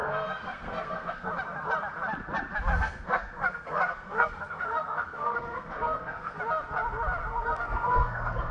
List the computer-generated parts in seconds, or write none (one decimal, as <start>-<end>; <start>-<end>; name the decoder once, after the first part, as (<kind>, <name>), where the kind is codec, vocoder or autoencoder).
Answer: 0.0-1.3 (codec, SNAC); 2.7-6.4; 7.3-8.5

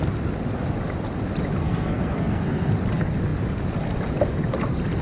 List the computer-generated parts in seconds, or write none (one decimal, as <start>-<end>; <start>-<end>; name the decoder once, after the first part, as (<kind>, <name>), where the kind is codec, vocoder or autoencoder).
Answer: 1.6-2.7 (codec, SNAC)

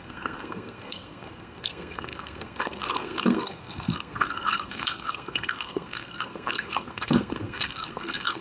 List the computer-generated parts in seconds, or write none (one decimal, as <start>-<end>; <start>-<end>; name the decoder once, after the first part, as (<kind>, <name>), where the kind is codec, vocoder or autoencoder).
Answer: 0.0-8.4 (codec, SNAC)

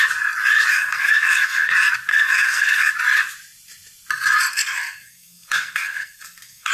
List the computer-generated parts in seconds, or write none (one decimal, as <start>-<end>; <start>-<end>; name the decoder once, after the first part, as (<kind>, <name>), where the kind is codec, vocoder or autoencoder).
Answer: 0.7-1.7 (codec, SNAC); 2.1-2.9; 4.5-6.7

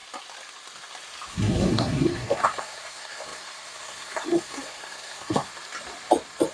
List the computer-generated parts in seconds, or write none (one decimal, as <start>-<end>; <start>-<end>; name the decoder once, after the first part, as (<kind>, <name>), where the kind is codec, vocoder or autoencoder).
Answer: 1.3-5.5 (codec, SNAC)

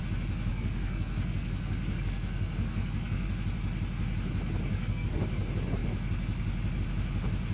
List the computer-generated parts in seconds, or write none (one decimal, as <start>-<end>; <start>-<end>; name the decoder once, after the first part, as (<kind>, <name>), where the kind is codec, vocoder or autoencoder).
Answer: 0.5-3.3 (codec, SNAC); 4.7-5.2